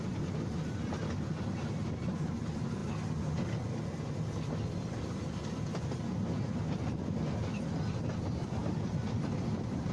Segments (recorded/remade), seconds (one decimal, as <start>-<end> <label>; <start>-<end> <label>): 0.0-9.9 recorded